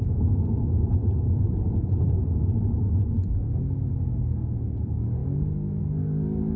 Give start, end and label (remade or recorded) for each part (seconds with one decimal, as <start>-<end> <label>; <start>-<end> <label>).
0.0-1.0 remade; 1.0-3.3 recorded; 3.3-6.6 remade